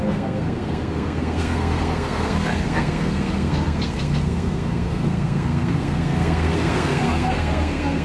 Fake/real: fake